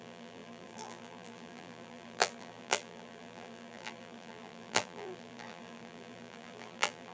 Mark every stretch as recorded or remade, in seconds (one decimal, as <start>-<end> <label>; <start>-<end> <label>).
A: 0.0-7.1 remade